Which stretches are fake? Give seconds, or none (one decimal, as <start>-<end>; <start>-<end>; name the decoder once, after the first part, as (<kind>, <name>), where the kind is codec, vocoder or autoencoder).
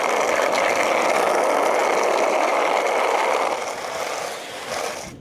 none